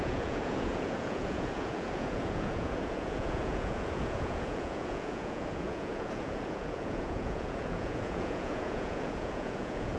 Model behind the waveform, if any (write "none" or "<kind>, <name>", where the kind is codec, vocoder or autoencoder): vocoder, Vocos